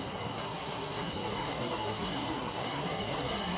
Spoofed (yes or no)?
yes